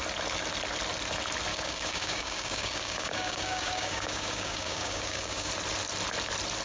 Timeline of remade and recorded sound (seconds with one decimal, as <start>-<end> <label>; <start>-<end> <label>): 0.0-1.5 recorded; 1.5-5.5 remade; 5.5-6.6 recorded